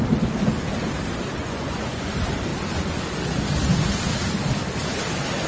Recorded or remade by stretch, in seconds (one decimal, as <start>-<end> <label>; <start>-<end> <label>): 0.0-1.4 recorded; 1.4-2.1 remade; 2.1-5.5 recorded